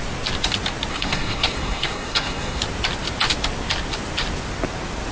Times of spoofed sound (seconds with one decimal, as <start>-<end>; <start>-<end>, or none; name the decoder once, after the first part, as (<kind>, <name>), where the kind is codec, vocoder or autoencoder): 0.9-2.6 (codec, SNAC)